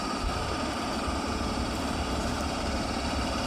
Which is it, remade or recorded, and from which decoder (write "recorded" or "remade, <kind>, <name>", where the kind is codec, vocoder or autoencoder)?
remade, vocoder, BigVGAN v2